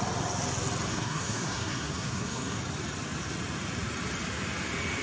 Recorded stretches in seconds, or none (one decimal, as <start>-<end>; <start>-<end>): 0.0-0.9; 2.6-5.0